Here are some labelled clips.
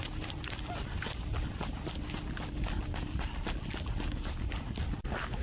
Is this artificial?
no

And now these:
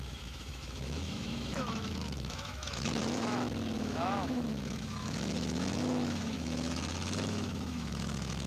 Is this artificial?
yes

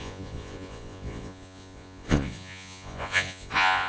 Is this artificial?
yes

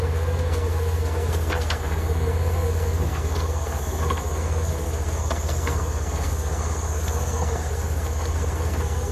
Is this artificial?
yes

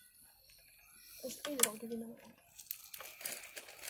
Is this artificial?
no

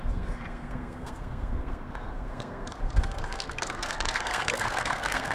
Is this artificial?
yes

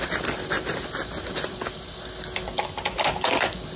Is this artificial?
no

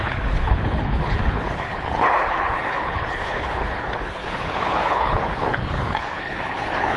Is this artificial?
yes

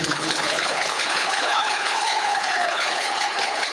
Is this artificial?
yes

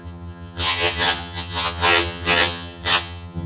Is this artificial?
yes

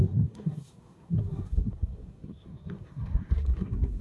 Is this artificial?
yes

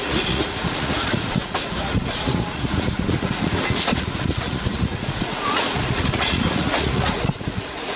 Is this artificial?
yes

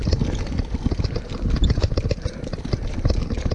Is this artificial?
no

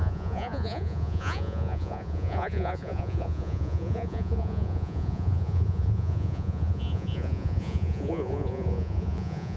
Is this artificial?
yes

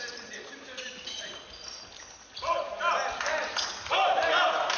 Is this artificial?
no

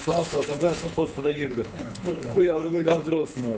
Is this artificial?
yes